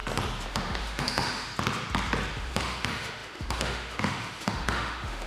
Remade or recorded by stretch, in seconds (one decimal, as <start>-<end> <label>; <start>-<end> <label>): 0.0-0.5 recorded; 0.5-1.5 remade; 1.5-2.3 recorded; 2.3-5.3 remade